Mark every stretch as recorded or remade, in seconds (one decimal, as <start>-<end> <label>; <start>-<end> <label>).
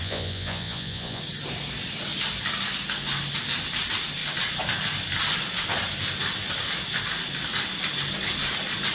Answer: 0.0-1.2 remade; 1.2-8.9 recorded